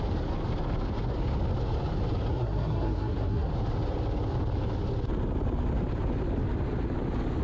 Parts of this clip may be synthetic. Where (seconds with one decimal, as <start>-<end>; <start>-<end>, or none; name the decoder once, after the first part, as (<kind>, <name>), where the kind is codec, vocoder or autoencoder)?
2.3-3.5 (codec, SNAC)